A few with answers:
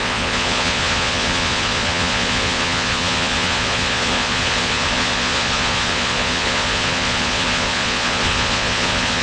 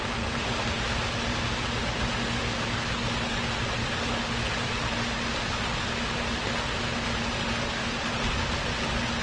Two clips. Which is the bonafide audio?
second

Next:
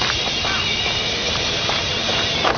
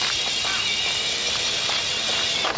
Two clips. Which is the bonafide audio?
second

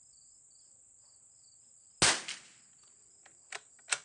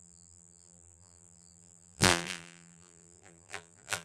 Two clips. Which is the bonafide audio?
first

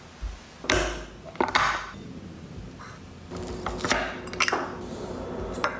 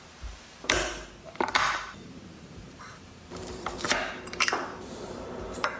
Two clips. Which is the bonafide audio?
first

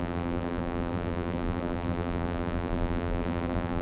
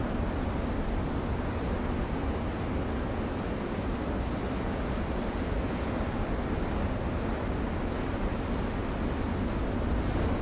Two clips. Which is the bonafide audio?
second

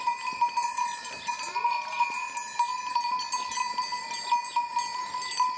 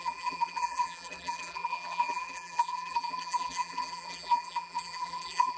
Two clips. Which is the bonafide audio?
first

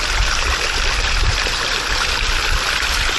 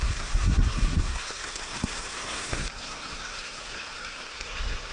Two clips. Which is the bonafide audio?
first